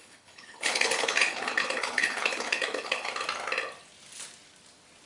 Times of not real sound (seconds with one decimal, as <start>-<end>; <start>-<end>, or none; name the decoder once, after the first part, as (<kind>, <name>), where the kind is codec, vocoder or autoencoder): 0.0-3.1 (codec, HILCodec)